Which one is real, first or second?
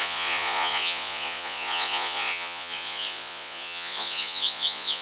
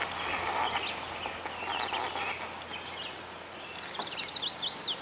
second